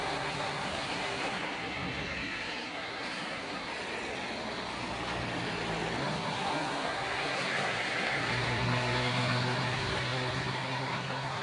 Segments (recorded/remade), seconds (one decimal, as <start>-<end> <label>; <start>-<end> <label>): 0.0-3.7 remade; 3.7-6.0 recorded; 6.0-11.4 remade